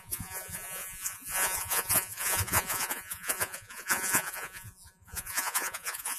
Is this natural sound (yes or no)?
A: no